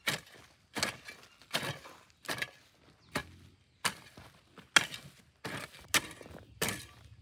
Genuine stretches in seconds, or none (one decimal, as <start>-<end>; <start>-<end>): 0.0-7.2